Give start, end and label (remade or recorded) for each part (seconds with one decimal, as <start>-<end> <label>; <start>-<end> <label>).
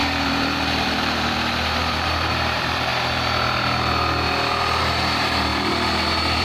0.0-2.9 remade; 2.9-4.8 recorded; 4.8-6.4 remade